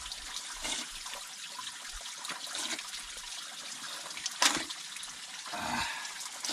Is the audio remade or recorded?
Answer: recorded